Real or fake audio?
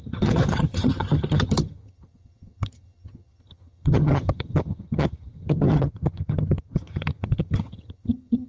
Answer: fake